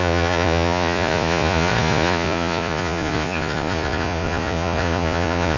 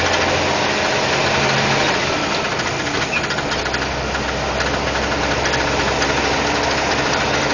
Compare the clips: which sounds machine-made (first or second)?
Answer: first